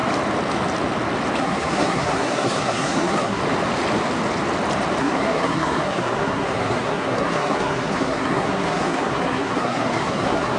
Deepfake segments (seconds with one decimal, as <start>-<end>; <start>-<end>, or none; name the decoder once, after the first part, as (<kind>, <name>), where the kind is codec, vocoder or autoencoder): 1.4-3.4 (codec, SNAC); 5.0-10.6